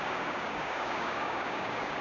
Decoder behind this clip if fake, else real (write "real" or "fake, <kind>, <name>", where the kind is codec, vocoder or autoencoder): fake, codec, DAC